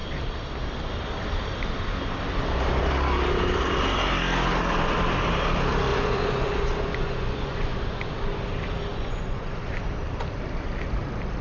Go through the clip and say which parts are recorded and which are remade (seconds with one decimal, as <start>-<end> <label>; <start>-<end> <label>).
0.0-5.9 recorded; 5.9-8.1 remade; 8.1-8.9 recorded; 8.9-9.6 remade; 9.6-11.4 recorded